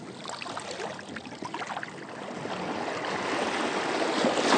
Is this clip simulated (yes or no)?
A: no